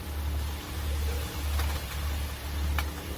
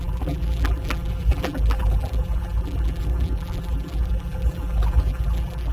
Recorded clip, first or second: first